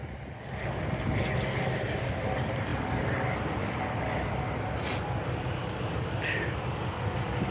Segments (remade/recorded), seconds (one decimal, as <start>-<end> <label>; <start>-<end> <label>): 0.0-5.6 recorded; 5.6-6.2 remade; 6.2-7.5 recorded